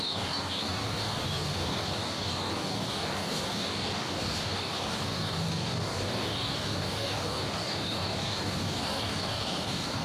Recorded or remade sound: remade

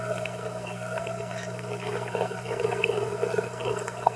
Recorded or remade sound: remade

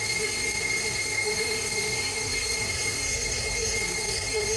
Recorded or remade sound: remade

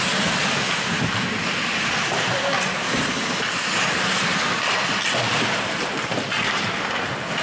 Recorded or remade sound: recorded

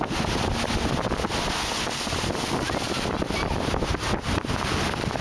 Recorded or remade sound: recorded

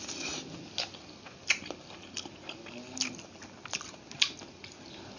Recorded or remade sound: recorded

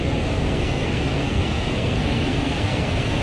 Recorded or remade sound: remade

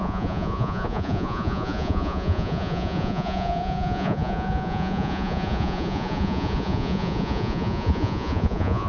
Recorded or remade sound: remade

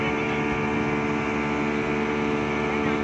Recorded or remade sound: recorded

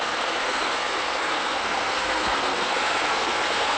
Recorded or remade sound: remade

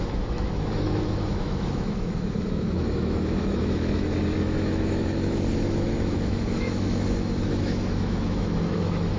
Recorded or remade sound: remade